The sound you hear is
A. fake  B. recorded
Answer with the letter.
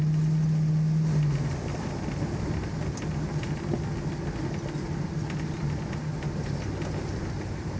B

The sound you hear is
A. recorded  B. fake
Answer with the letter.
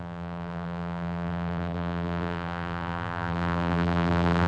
B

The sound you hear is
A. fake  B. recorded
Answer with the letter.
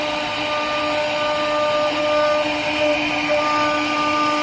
B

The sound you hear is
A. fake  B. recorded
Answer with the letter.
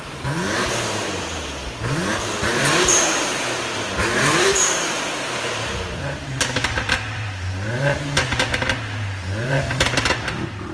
A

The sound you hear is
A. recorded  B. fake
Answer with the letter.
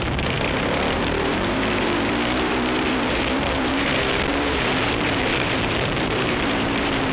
B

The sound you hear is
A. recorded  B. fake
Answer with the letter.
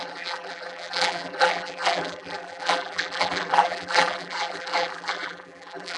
B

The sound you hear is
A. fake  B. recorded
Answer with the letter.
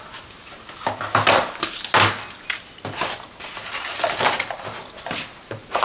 B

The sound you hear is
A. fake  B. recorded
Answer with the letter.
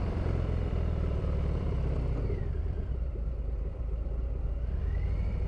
A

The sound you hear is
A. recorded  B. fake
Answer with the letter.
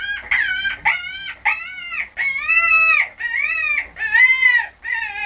A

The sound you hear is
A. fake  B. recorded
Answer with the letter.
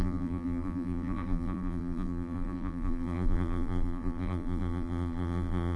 A